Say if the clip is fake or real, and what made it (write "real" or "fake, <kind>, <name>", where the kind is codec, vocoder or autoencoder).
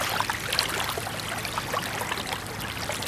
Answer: real